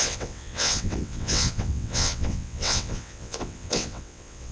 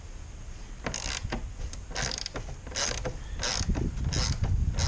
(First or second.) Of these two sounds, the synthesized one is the first